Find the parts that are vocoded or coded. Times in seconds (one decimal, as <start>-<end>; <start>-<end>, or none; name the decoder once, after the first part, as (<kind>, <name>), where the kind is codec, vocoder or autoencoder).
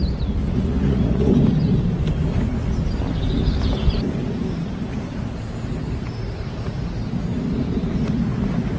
0.4-1.3 (vocoder, Vocos)